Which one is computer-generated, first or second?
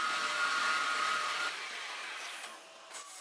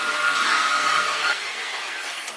second